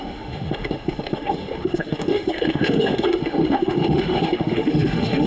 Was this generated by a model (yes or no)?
yes